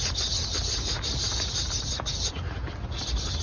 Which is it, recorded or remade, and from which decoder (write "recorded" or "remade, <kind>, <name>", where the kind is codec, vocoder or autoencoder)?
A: recorded